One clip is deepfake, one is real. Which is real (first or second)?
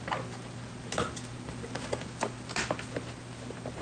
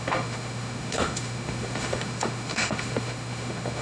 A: first